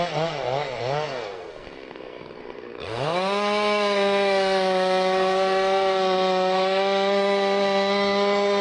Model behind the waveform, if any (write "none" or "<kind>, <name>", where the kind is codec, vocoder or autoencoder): codec, SNAC